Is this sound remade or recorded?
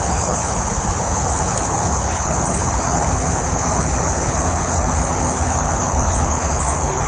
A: remade